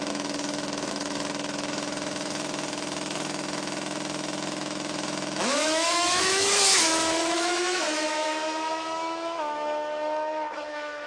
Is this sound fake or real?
fake